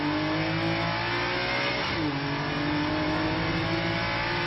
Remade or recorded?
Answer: recorded